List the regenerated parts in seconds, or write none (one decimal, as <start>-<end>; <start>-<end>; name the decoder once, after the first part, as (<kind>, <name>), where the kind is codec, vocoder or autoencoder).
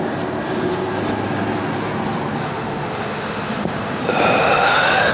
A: 2.4-4.0 (autoencoder, DAC-VAE); 4.4-5.1